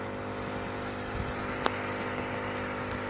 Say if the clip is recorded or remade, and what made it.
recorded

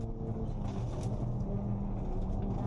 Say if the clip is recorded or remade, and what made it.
recorded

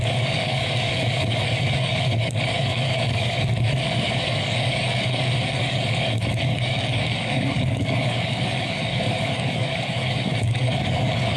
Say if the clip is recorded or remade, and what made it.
remade, codec, DAC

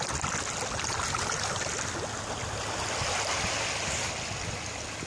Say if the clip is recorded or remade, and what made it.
recorded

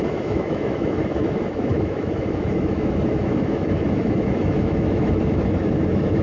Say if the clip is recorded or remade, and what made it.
remade, autoencoder, DAC-VAE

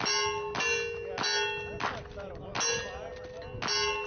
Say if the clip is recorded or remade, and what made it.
recorded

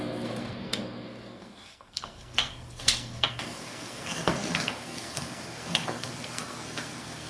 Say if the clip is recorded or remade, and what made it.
remade, codec, SNAC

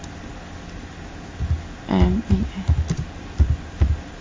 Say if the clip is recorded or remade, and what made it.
recorded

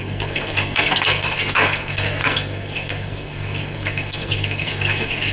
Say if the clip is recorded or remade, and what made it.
remade, codec, SNAC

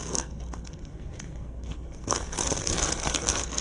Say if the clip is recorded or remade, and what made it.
remade, codec, SNAC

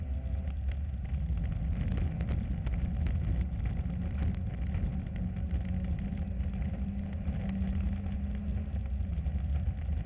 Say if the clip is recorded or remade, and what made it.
recorded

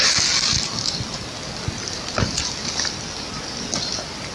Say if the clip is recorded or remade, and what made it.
recorded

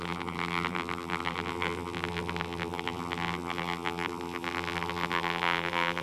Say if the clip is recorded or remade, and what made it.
remade, vocoder, BigVGAN v2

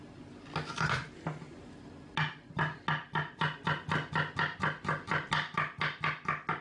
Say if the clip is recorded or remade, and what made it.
recorded